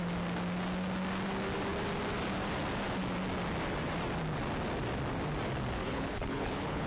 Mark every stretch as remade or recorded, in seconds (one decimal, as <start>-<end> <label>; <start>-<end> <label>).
0.0-5.8 recorded; 5.8-6.9 remade